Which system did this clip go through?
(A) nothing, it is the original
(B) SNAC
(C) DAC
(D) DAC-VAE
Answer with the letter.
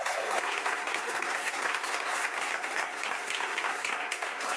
B